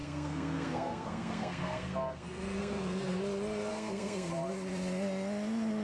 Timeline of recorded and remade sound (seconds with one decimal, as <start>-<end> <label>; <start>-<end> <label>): 0.0-3.2 remade; 3.2-3.7 recorded; 3.7-4.3 remade; 4.3-5.8 recorded